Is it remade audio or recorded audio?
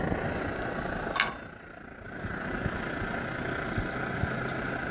recorded